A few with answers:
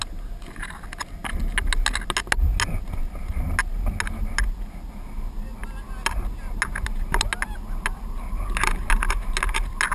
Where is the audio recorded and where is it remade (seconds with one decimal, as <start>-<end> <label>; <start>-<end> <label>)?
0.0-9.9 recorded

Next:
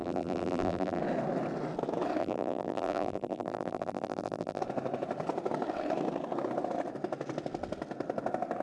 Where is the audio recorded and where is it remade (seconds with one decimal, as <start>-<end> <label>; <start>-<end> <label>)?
0.0-1.0 remade; 1.0-2.2 recorded; 2.2-4.6 remade; 4.6-8.6 recorded

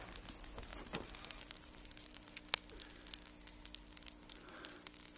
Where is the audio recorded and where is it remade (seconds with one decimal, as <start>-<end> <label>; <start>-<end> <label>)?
0.0-0.7 recorded; 0.7-2.3 remade; 2.3-5.2 recorded